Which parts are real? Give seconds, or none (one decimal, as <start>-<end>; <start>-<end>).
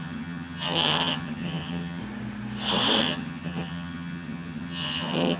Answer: 2.0-3.0